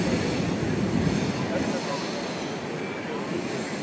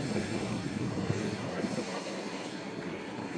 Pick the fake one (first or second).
second